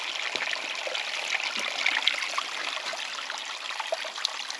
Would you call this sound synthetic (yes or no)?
no